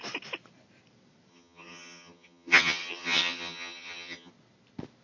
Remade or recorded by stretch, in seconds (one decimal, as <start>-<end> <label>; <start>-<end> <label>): 0.0-1.3 recorded; 1.3-4.3 remade; 4.3-5.0 recorded